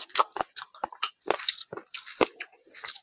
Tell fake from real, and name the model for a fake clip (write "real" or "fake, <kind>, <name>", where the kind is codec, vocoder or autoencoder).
real